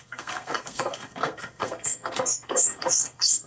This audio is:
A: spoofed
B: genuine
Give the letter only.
A